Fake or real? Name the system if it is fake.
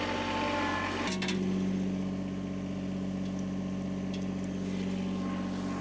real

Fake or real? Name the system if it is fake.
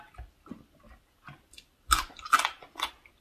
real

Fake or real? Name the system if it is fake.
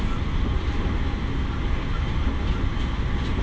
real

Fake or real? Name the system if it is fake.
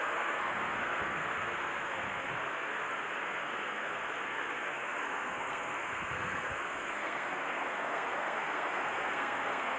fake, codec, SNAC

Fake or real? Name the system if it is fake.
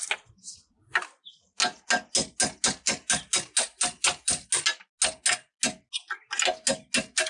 real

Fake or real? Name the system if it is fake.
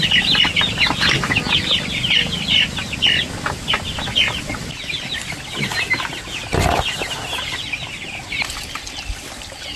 real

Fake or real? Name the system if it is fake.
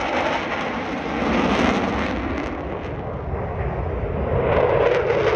real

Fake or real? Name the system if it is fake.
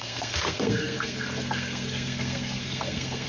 fake, codec, SNAC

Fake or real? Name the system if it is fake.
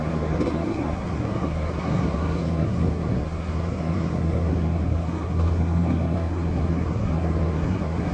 fake, codec, SNAC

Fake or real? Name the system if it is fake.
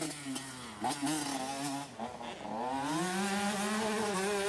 real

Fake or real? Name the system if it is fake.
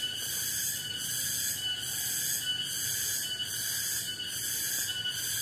real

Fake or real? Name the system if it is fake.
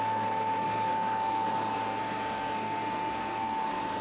fake, codec, SNAC